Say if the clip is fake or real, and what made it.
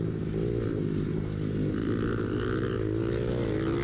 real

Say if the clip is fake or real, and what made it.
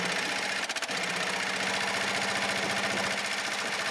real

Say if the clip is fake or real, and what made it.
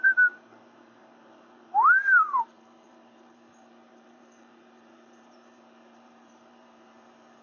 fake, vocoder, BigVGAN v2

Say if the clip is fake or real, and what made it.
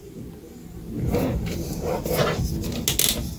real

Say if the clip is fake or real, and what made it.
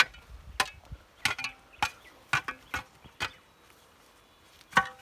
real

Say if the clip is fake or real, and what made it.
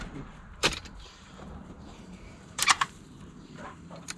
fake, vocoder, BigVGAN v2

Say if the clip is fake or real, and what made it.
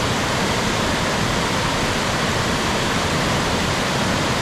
fake, vocoder, BigVGAN v2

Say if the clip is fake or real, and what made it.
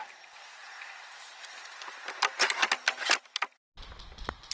real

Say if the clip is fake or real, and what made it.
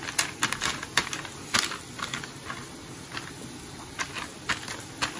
real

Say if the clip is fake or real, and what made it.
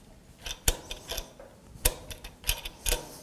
real